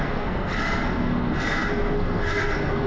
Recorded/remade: remade